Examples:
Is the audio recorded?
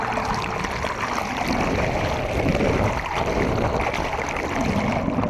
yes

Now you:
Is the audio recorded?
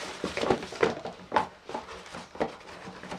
yes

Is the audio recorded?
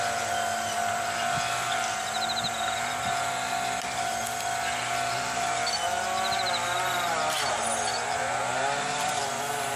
no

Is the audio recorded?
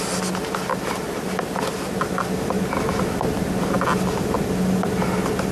yes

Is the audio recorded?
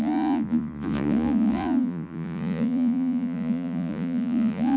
no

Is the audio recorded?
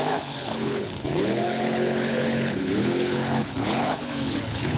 no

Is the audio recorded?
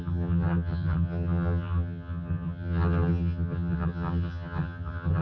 no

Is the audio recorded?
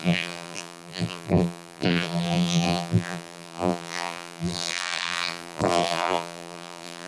no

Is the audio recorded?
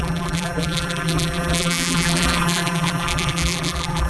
no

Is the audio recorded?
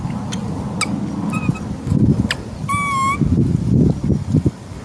yes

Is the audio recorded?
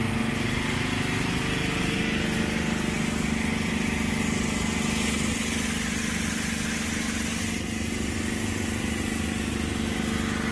yes